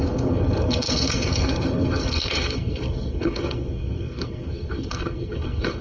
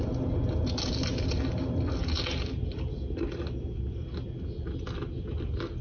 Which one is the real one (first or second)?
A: second